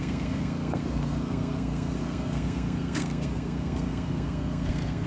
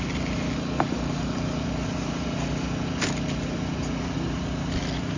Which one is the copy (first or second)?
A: first